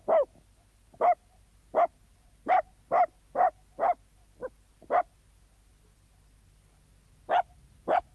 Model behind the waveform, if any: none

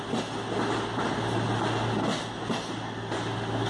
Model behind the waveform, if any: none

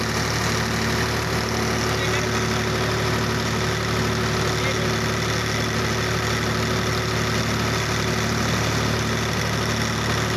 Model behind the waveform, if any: none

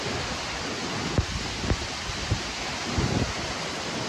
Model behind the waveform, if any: none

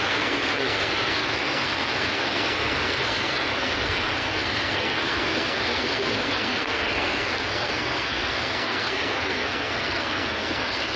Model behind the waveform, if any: codec, SNAC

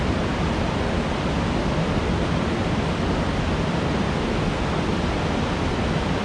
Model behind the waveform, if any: none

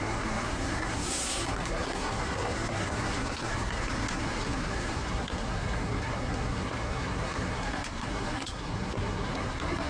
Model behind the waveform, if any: codec, SNAC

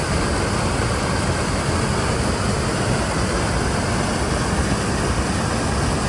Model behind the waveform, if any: none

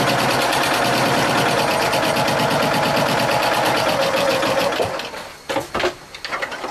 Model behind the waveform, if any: none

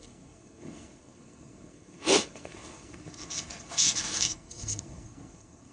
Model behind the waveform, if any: codec, SNAC